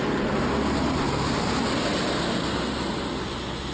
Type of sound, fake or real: real